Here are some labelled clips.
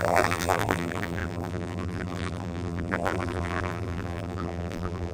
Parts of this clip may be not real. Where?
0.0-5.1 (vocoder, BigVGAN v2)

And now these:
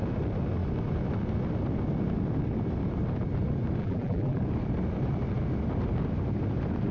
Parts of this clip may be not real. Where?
3.8-4.4 (vocoder, BigVGAN v2)

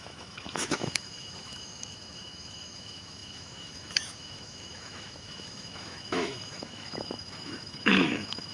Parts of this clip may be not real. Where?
0.0-8.5 (autoencoder, DAC-VAE)